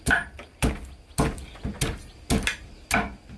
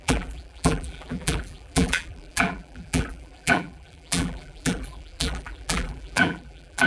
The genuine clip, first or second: first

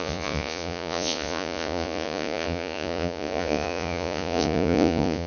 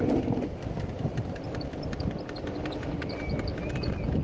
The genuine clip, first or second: second